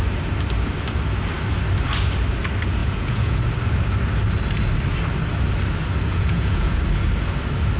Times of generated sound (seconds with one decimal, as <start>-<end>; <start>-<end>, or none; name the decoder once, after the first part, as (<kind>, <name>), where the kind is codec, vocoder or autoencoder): 2.8-3.4 (vocoder, Vocos); 6.1-6.8